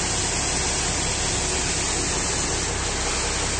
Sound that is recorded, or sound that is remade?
recorded